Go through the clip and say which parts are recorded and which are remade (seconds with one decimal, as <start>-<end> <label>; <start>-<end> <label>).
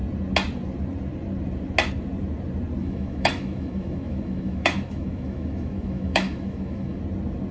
0.0-2.8 recorded; 2.8-7.0 remade; 7.0-7.5 recorded